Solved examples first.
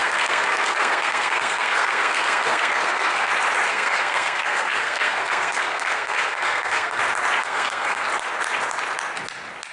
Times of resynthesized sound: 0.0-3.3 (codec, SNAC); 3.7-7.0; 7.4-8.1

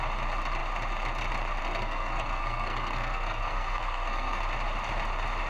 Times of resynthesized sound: 1.6-4.4 (codec, SNAC)